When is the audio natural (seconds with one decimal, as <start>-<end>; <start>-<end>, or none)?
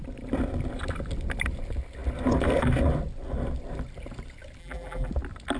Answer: 0.0-4.6; 5.1-5.6